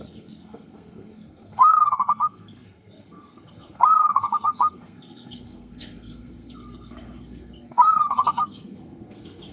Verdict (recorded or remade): remade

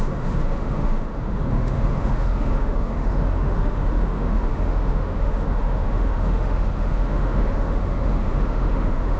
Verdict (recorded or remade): remade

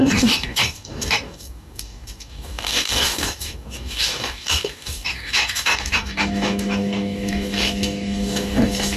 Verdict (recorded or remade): remade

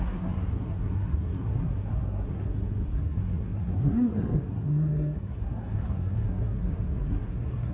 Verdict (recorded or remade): remade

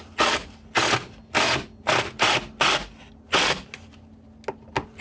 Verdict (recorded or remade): recorded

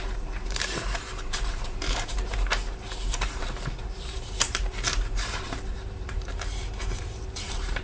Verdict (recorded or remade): remade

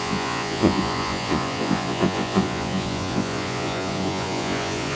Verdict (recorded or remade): remade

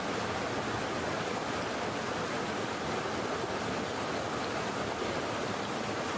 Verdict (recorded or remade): recorded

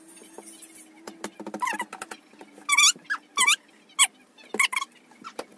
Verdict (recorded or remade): recorded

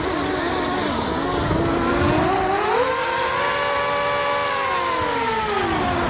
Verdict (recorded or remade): recorded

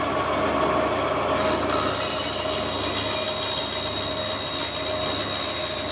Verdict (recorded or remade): recorded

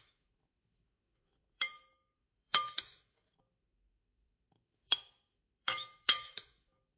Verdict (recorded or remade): remade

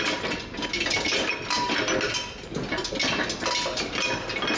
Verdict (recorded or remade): recorded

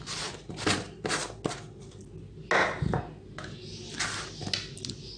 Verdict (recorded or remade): recorded